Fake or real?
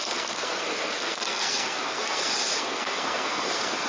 fake